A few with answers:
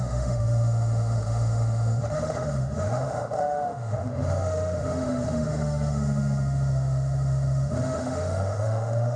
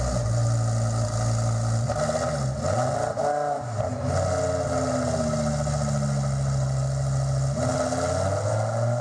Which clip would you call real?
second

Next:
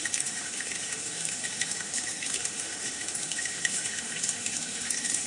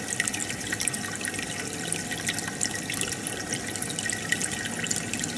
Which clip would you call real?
second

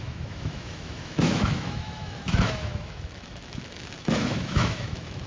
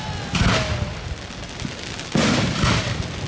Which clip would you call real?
second